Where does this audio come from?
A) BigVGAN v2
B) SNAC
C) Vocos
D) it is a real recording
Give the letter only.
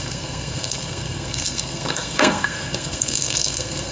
B